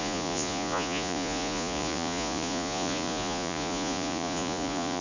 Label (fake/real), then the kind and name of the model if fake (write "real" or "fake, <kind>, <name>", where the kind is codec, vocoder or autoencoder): fake, vocoder, Vocos